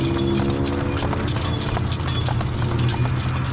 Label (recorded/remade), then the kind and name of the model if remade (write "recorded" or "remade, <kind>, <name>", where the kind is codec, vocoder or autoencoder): recorded